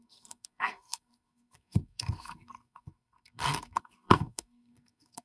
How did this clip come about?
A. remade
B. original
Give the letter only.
A